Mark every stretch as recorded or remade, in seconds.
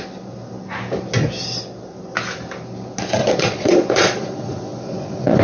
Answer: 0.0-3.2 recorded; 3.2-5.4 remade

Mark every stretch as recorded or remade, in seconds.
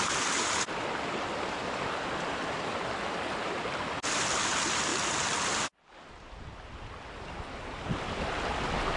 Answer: 0.0-9.0 recorded